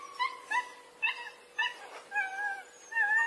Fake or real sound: real